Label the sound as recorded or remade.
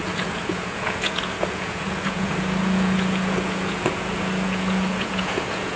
remade